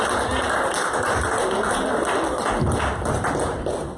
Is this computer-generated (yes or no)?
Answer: no